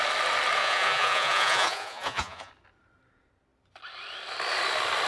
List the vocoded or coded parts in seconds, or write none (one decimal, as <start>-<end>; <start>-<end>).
0.6-2.5